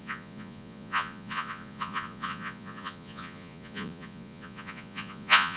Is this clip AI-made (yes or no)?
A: yes